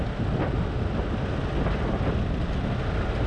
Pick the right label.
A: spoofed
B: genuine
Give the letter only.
B